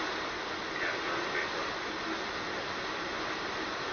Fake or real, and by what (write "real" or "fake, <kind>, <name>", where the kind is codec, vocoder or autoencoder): real